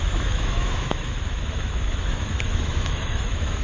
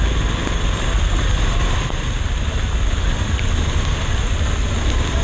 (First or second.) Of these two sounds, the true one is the second